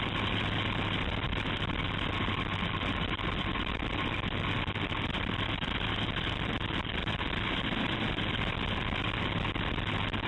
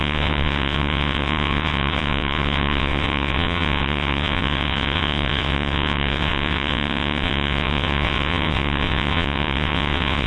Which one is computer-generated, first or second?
second